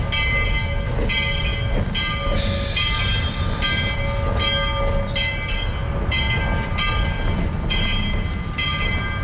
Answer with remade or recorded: recorded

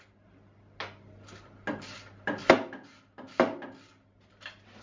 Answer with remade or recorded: recorded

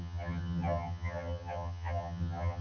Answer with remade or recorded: remade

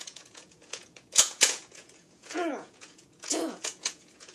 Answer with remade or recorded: remade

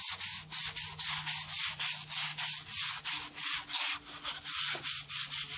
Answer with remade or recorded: recorded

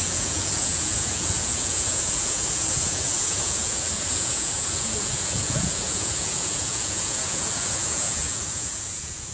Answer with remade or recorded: remade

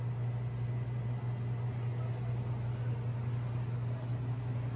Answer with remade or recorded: recorded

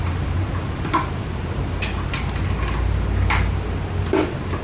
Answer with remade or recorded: recorded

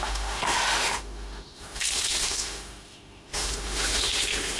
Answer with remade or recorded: remade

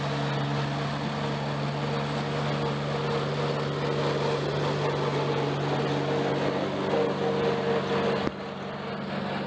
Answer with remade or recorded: recorded